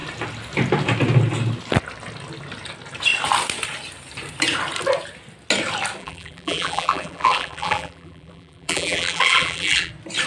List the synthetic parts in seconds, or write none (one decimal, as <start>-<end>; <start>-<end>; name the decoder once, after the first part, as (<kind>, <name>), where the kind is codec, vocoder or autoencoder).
6.0-9.9 (vocoder, BigVGAN v2)